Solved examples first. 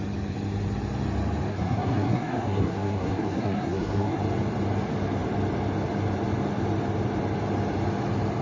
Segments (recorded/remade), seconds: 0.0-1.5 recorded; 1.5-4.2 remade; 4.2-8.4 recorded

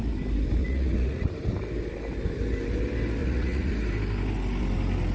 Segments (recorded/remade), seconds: 0.0-0.6 recorded; 0.6-1.3 remade; 1.3-3.2 recorded; 3.2-3.7 remade; 3.7-5.1 recorded

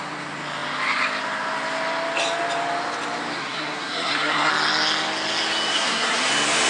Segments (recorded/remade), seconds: 0.0-3.4 recorded; 3.4-4.5 remade; 4.5-5.7 recorded; 5.7-6.3 remade; 6.3-6.7 recorded

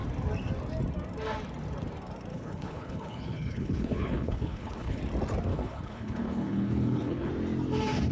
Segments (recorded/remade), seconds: 0.0-2.3 recorded; 2.3-5.0 remade; 5.0-5.5 recorded; 5.5-7.3 remade; 7.3-8.1 recorded

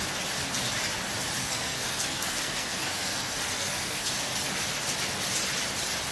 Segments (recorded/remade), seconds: 0.0-1.4 recorded; 1.4-4.1 remade; 4.1-6.1 recorded

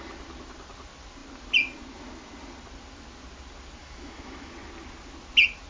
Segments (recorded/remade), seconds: 0.0-3.8 recorded; 3.8-4.5 remade; 4.5-5.7 recorded